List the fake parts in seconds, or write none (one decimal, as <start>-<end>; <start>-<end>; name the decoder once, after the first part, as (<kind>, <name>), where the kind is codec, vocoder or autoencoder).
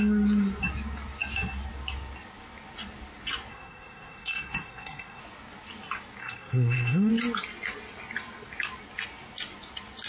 3.5-5.2 (codec, SNAC); 6.2-7.1